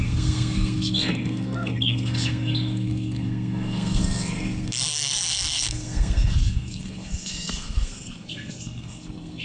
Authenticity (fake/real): fake